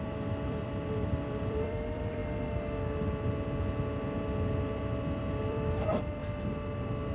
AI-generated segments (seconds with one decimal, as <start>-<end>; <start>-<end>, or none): 0.0-2.2; 4.8-6.2